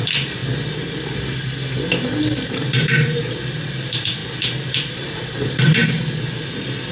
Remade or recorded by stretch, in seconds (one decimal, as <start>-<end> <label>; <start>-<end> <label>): 0.0-0.4 remade; 0.4-2.4 recorded; 2.4-5.8 remade; 5.8-6.9 recorded